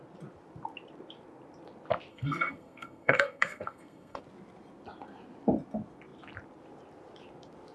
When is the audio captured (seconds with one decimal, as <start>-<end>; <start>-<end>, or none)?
0.0-2.1; 4.2-7.7